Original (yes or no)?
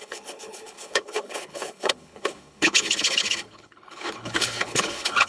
no